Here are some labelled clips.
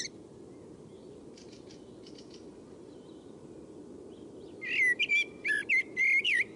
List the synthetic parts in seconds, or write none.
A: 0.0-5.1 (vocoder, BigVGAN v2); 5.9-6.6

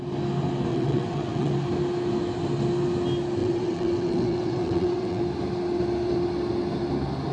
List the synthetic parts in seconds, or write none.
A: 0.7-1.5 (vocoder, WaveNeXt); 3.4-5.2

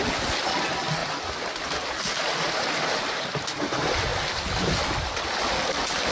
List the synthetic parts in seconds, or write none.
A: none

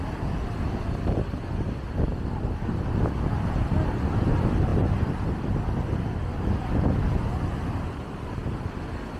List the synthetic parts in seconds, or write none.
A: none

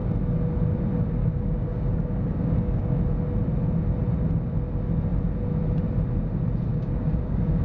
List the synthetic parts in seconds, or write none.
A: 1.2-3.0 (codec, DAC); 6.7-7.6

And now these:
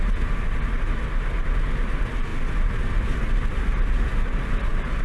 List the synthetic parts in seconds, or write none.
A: none

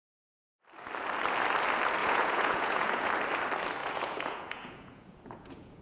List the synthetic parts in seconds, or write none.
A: 2.0-3.1 (vocoder, Vocos); 3.8-5.8